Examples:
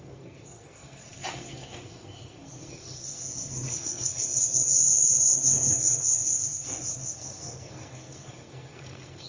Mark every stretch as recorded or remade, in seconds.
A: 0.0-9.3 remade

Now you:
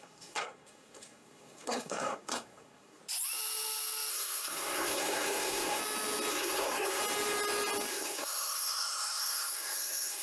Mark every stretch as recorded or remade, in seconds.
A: 0.0-3.0 remade; 3.0-4.1 recorded; 4.1-5.8 remade; 5.8-6.3 recorded; 6.3-7.0 remade; 7.0-7.9 recorded; 7.9-10.2 remade

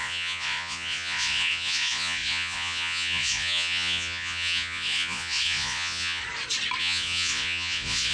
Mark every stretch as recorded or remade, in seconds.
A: 0.0-6.2 remade; 6.2-6.8 recorded; 6.8-8.1 remade